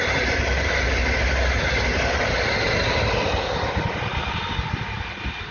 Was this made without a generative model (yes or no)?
yes